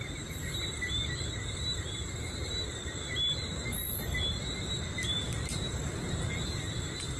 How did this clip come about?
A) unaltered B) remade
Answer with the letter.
A